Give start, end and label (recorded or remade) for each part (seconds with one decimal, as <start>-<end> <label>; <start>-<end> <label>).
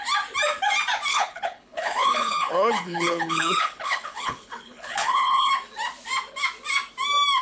0.0-1.1 recorded; 1.1-5.5 remade; 5.5-7.4 recorded